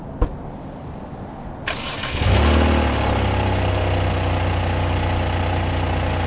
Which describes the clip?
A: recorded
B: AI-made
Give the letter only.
A